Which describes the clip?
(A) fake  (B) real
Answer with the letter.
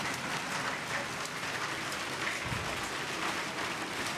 B